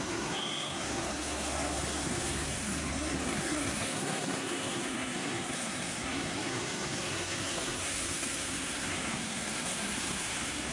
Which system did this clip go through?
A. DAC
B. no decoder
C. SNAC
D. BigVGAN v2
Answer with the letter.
C